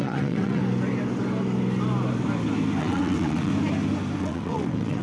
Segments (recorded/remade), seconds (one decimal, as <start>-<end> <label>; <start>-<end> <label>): 0.0-0.6 remade; 0.6-2.8 recorded; 2.8-3.5 remade; 3.5-4.2 recorded; 4.2-5.0 remade